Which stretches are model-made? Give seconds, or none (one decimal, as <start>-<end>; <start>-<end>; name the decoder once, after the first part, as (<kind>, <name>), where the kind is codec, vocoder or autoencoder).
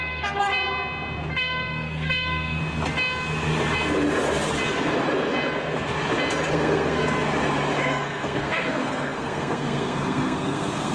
0.0-0.5 (codec, SNAC); 1.4-2.6; 6.5-7.0; 7.8-10.9